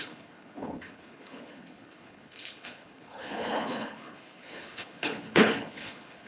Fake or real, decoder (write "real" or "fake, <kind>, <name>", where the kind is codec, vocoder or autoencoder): fake, codec, HILCodec